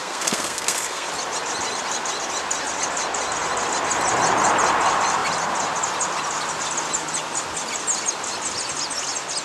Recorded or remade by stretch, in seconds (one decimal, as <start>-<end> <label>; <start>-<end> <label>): 0.0-1.1 remade; 1.1-9.4 recorded